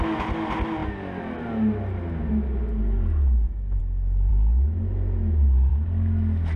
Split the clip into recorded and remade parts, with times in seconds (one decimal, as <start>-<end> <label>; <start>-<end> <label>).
0.0-6.6 recorded